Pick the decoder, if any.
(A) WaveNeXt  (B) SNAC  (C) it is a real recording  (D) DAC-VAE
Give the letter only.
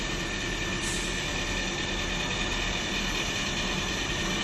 C